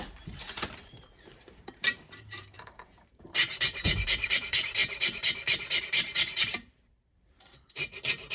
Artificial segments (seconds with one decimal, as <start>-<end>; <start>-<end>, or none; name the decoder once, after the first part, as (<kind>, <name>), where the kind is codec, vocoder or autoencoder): 0.0-4.8 (vocoder, BigVGAN v2); 5.8-8.3